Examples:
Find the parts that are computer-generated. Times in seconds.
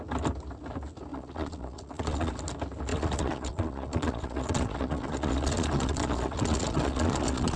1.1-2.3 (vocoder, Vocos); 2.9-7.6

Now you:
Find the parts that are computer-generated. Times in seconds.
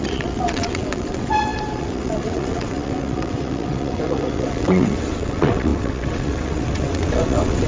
0.0-7.7 (vocoder, WaveNeXt)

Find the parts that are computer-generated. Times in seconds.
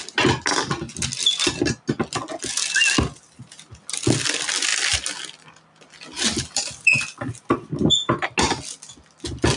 none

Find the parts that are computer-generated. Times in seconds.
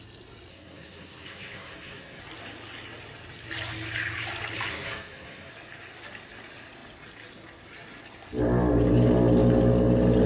0.5-2.2 (codec, SNAC); 4.7-5.5